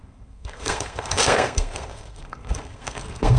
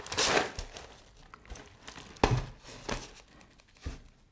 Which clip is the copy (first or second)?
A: first